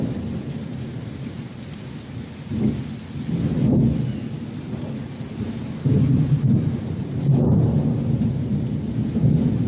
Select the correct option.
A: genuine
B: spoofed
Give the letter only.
A